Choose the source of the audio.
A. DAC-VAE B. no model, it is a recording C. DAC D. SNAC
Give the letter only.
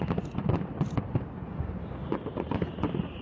B